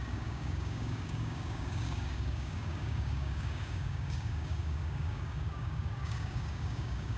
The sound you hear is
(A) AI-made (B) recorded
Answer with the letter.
A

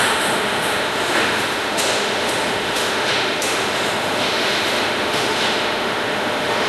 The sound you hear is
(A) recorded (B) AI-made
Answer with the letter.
B